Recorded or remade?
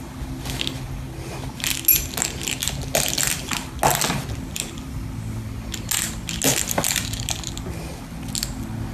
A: recorded